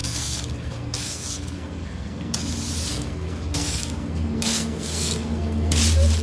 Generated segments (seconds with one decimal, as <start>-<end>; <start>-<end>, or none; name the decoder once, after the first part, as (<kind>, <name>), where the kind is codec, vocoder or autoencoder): 0.0-2.5 (codec, SNAC); 2.9-5.8